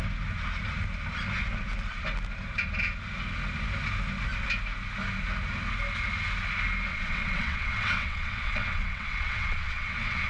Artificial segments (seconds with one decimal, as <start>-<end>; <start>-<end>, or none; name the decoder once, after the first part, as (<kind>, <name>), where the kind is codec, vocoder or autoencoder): 6.9-10.3 (vocoder, WaveNeXt)